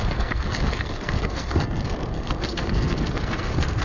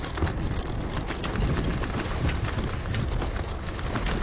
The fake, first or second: first